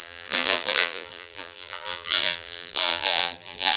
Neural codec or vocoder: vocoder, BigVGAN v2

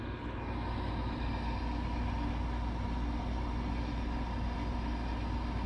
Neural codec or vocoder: none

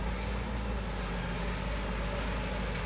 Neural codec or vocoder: none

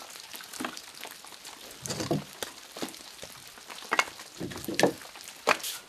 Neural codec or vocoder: none